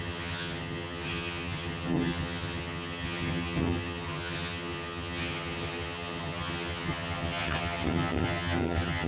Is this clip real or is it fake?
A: fake